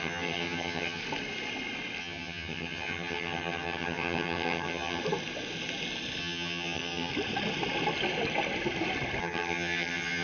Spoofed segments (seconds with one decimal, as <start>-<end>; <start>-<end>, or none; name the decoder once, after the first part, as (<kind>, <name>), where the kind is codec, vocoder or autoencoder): 0.0-1.0 (vocoder, HiFi-GAN); 2.0-5.0; 6.2-7.1; 9.2-10.2